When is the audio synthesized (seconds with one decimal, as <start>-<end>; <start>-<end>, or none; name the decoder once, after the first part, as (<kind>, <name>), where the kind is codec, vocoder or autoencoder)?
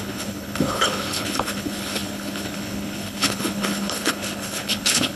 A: 0.0-5.2 (codec, HILCodec)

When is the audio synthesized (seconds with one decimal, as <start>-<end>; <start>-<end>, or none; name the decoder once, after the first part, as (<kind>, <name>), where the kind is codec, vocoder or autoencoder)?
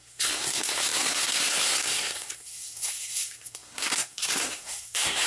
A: 0.0-5.3 (codec, SNAC)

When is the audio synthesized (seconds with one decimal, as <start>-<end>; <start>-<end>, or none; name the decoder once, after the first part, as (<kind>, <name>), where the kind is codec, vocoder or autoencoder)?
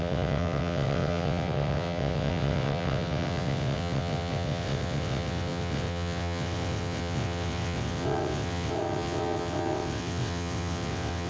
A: 0.0-11.3 (vocoder, WaveNeXt)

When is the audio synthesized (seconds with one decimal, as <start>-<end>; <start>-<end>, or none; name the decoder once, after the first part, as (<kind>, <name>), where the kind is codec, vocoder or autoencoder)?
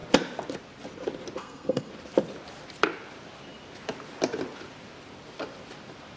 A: 1.4-1.9 (codec, SNAC)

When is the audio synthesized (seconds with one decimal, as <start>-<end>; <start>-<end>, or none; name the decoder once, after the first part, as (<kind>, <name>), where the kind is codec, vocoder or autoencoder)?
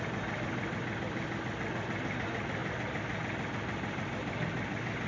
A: none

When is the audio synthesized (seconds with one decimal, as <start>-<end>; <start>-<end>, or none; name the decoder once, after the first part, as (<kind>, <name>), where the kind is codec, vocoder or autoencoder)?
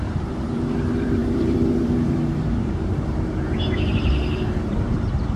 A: 0.0-5.4 (vocoder, BigVGAN v2)